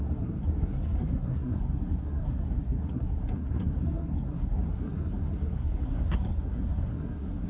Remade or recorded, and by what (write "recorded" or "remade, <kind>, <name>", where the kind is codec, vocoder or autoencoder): remade, codec, SNAC